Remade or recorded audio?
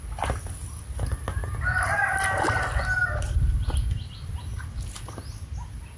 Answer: recorded